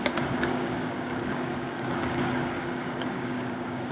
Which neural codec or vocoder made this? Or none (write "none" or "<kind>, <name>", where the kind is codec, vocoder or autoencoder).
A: codec, DAC